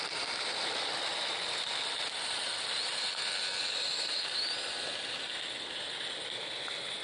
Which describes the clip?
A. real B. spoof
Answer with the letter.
A